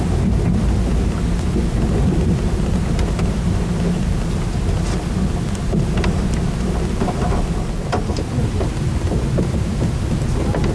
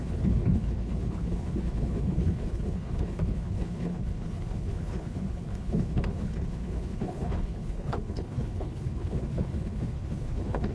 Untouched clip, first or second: first